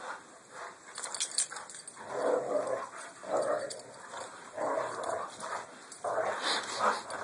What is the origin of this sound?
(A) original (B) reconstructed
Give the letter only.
A